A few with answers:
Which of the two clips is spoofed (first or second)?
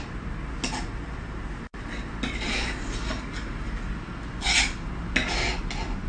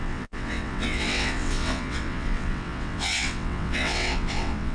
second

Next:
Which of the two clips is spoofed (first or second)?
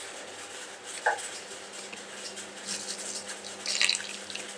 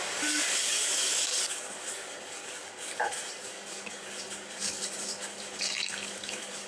second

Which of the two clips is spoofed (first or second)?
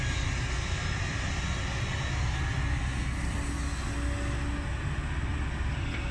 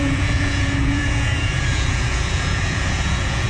second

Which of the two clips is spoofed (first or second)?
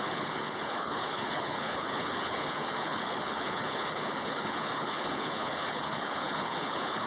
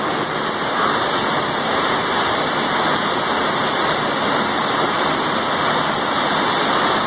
first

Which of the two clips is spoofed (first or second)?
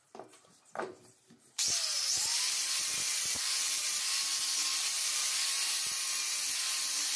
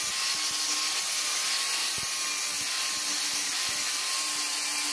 first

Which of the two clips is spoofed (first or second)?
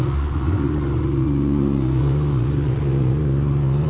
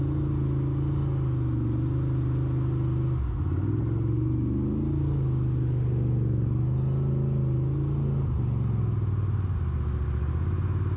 first